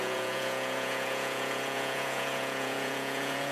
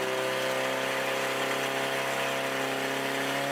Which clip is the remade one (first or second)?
first